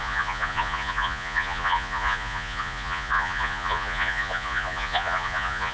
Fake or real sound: fake